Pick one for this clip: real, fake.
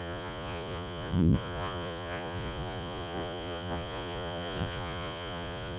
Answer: fake